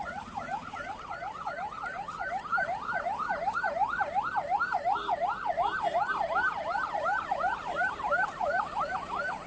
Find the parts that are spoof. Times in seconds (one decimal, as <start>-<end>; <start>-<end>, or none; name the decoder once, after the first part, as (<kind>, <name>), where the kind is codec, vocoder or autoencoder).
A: 2.5-4.0 (vocoder, Vocos)